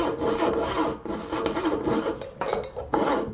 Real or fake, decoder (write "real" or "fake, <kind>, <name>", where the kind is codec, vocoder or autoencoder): real